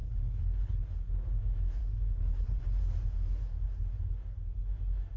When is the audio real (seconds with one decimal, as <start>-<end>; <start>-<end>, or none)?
1.0-1.8; 2.6-5.2